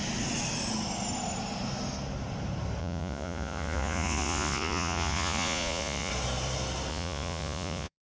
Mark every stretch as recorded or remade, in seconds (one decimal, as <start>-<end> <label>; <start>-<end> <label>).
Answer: 0.0-2.8 recorded; 2.8-6.1 remade; 6.1-6.9 recorded; 6.9-8.1 remade